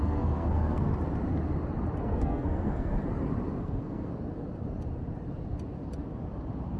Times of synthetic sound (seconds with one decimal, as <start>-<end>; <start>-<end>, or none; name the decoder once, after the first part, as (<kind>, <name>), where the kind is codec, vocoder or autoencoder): 0.0-0.9 (codec, SNAC); 2.0-2.9; 3.6-4.1